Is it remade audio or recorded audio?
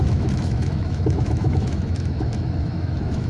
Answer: remade